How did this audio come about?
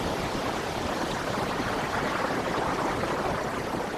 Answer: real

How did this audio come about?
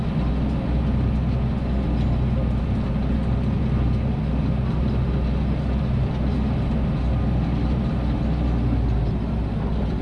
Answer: real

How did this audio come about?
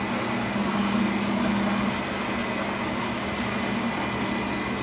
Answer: real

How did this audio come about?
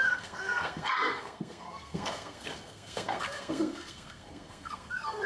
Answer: fake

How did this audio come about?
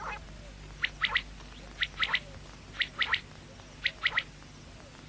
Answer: real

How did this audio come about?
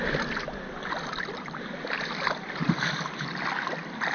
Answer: real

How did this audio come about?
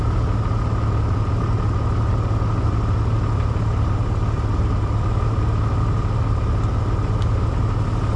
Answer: real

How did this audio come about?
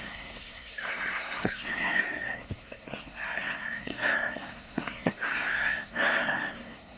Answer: fake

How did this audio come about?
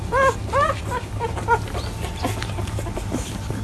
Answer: real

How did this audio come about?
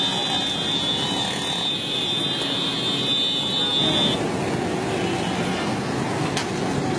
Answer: real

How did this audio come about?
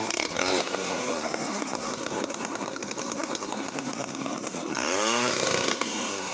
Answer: fake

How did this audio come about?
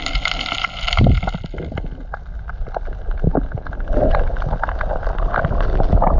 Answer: real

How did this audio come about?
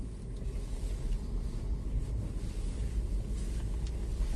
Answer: real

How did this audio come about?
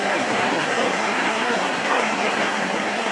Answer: fake